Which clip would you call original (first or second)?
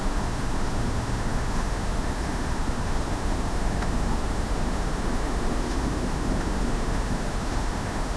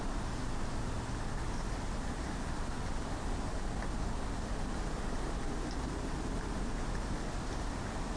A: second